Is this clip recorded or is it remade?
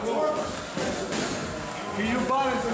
recorded